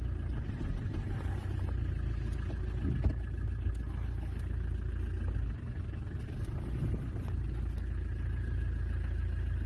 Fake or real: real